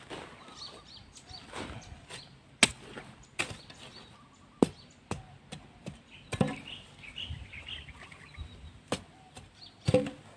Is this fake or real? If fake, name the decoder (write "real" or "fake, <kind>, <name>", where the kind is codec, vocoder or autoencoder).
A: real